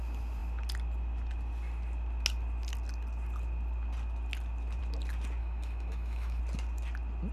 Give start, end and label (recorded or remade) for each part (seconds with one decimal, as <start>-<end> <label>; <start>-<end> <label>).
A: 0.0-5.4 recorded; 5.4-6.4 remade; 6.4-7.3 recorded